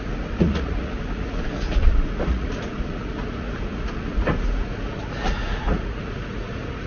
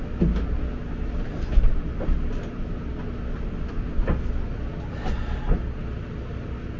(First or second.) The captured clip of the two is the second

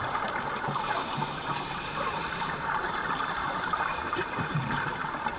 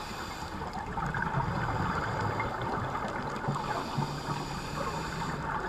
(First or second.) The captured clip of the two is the second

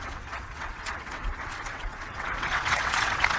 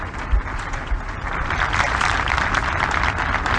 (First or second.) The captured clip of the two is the second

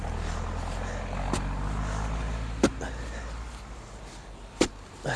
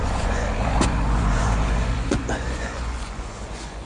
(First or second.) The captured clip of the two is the first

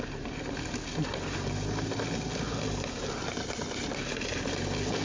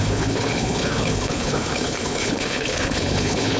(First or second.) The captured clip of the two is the first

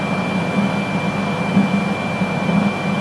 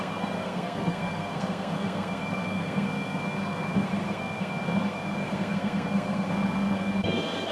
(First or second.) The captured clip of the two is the first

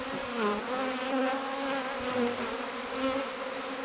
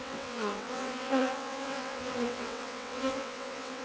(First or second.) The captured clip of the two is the first